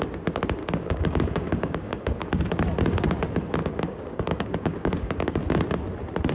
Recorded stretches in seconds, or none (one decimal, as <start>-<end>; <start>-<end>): 0.0-0.6; 2.3-3.6; 5.3-6.3